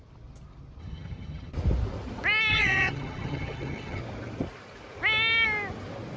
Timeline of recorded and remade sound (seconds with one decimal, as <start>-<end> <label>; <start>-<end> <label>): 0.0-0.8 recorded; 0.8-1.5 remade; 1.5-2.5 recorded; 2.5-4.0 remade; 4.0-6.2 recorded